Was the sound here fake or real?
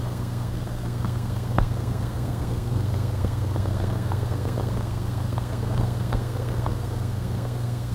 fake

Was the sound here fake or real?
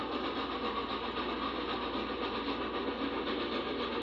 real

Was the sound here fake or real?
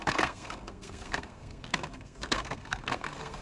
fake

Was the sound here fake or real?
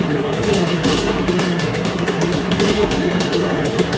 fake